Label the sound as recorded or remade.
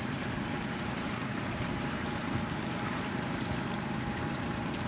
remade